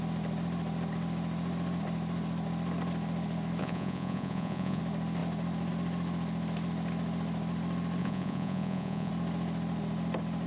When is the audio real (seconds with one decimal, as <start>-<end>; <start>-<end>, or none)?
0.0-3.6; 4.8-8.0; 9.1-10.5